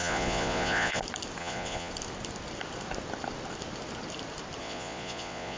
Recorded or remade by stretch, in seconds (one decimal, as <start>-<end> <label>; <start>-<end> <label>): 0.0-1.0 remade; 1.0-1.4 recorded; 1.4-1.9 remade; 1.9-4.6 recorded; 4.6-5.6 remade